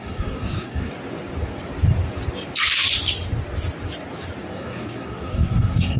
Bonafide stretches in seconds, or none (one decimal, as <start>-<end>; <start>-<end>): 0.9-4.5